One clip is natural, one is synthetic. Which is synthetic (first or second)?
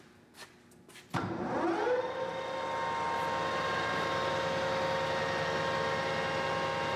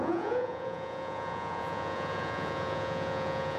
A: second